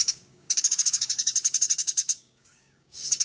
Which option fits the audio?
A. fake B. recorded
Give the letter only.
A